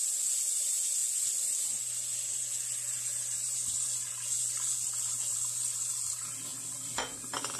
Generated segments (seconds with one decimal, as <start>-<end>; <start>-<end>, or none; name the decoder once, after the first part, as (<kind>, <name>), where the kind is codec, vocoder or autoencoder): none